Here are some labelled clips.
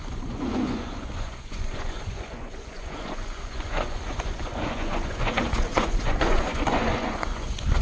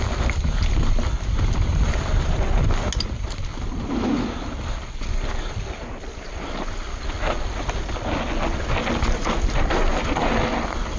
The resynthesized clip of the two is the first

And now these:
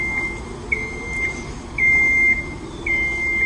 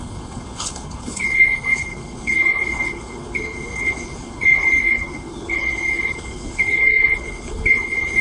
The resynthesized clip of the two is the second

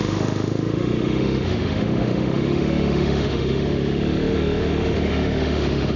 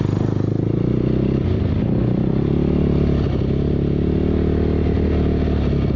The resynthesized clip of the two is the first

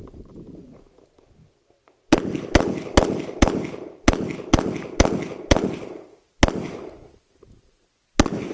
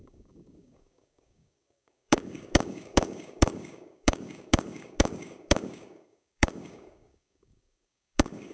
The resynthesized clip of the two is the second